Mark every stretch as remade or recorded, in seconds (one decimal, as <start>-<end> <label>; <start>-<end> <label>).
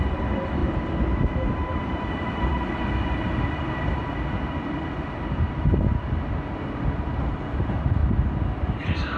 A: 0.0-0.6 remade; 0.6-1.5 recorded; 1.5-4.0 remade; 4.0-6.6 recorded; 6.6-8.0 remade; 8.0-8.6 recorded; 8.6-9.2 remade